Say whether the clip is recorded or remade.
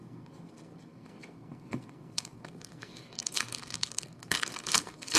remade